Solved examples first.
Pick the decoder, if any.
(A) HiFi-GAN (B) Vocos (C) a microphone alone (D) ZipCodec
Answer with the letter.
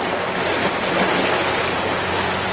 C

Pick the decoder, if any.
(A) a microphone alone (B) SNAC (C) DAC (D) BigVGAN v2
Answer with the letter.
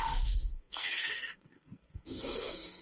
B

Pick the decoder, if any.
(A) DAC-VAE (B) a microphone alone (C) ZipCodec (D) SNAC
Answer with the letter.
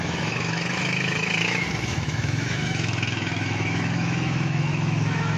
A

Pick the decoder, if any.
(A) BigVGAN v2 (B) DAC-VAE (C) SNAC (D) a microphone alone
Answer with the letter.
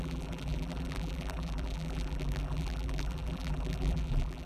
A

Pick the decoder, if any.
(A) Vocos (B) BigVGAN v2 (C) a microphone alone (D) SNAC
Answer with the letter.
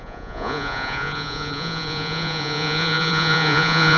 A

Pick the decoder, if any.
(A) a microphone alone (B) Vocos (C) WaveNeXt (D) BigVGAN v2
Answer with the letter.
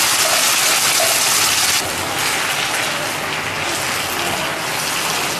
A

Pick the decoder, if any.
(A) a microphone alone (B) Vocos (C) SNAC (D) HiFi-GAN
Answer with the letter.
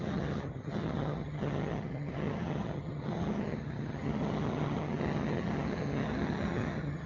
D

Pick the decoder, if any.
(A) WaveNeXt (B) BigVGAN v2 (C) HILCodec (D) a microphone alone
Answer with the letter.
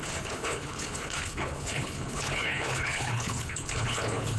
C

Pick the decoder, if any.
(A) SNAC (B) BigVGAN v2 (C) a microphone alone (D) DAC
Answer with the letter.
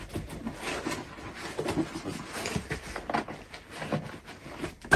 C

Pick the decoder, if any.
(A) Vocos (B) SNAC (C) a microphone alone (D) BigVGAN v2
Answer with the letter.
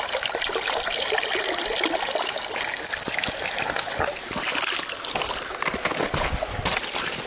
C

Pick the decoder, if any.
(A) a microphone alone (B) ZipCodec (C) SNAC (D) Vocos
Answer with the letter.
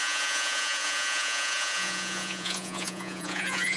D